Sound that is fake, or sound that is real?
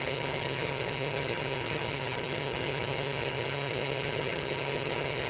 fake